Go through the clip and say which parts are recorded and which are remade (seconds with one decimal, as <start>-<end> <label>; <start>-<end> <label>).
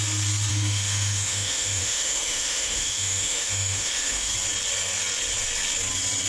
0.0-0.5 recorded; 0.5-4.3 remade; 4.3-6.3 recorded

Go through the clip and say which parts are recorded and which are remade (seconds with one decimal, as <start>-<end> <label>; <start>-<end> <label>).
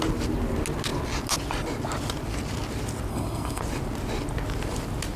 0.0-3.1 recorded; 3.1-3.6 remade; 3.6-5.2 recorded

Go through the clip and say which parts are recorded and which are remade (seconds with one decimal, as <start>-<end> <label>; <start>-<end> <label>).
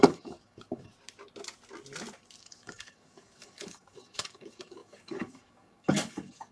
0.0-0.9 remade; 0.9-2.4 recorded; 2.4-6.5 remade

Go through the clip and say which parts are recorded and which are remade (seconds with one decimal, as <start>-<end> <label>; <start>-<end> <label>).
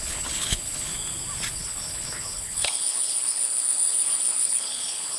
0.0-0.9 remade; 0.9-1.5 recorded; 1.5-5.2 remade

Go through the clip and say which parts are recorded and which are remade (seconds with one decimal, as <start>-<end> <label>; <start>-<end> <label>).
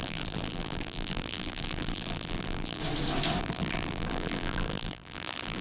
0.0-2.8 remade; 2.8-3.4 recorded; 3.4-5.6 remade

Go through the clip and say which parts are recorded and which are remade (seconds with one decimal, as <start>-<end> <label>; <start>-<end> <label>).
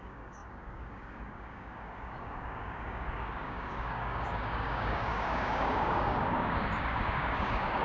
0.0-7.8 remade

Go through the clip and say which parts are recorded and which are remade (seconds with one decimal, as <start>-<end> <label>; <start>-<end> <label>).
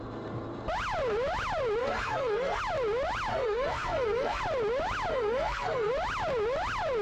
0.0-1.8 recorded; 1.8-2.6 remade; 2.6-3.3 recorded; 3.3-4.4 remade; 4.4-5.1 recorded; 5.1-5.9 remade; 5.9-7.0 recorded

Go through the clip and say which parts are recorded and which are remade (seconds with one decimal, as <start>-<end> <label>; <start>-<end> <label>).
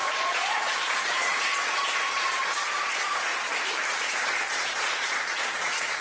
0.0-3.3 remade; 3.3-4.0 recorded; 4.0-6.0 remade